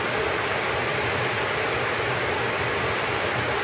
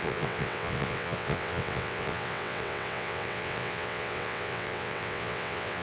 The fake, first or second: second